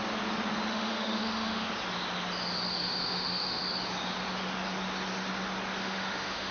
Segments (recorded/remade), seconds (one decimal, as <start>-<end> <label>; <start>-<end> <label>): 0.0-0.7 recorded; 0.7-1.7 remade; 1.7-2.8 recorded; 2.8-3.6 remade; 3.6-5.8 recorded; 5.8-6.5 remade